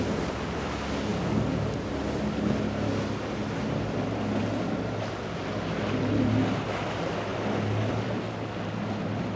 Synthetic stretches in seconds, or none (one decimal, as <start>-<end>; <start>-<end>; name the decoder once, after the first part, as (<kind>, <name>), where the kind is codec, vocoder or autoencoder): none